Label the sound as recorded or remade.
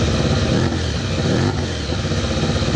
recorded